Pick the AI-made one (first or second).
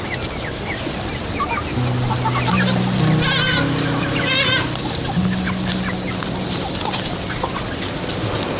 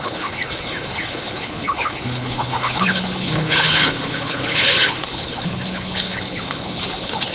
second